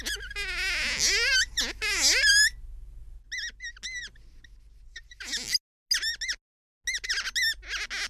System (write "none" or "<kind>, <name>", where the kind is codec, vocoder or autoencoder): none